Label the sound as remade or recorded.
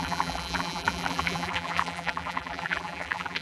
remade